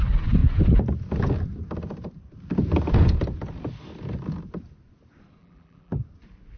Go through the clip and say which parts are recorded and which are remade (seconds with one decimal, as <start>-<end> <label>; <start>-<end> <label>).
0.0-5.4 recorded; 5.4-6.0 remade; 6.0-6.6 recorded

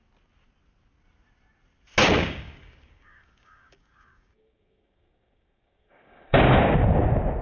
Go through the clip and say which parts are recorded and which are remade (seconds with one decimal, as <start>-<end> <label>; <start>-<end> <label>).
0.0-2.2 recorded; 2.2-6.6 remade; 6.6-7.4 recorded